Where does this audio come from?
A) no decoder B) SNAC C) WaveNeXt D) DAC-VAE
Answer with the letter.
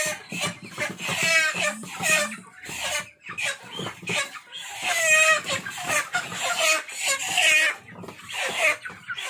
A